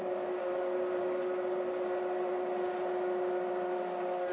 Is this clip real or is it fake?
real